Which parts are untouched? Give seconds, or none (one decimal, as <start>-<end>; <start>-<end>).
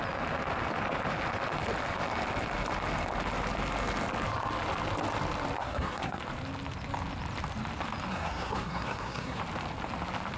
0.0-5.6; 6.2-8.1; 9.4-10.4